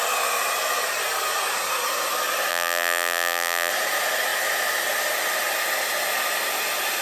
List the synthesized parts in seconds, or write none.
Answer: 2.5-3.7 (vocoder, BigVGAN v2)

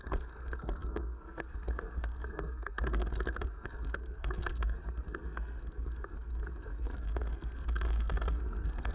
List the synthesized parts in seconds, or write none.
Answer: 0.0-8.9 (codec, SNAC)

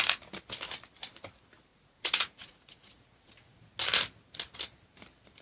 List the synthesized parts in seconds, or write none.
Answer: 1.7-3.6 (vocoder, Vocos)

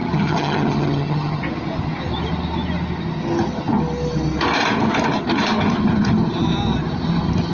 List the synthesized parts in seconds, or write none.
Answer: 0.0-1.4 (vocoder, HiFi-GAN)